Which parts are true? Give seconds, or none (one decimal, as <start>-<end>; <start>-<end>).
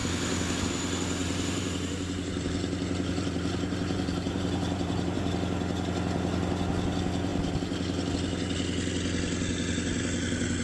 0.0-1.2; 5.3-10.6